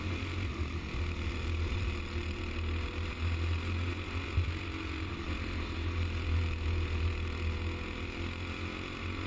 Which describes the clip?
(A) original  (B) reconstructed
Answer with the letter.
A